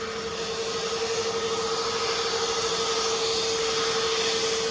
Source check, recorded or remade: recorded